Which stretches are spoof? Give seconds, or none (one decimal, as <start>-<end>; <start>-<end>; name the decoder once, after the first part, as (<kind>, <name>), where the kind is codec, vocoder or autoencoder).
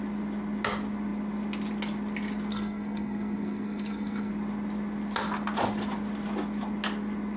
2.5-4.3 (codec, SNAC)